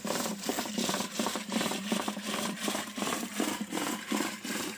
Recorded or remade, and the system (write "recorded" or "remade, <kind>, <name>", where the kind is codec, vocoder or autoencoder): remade, vocoder, BigVGAN v2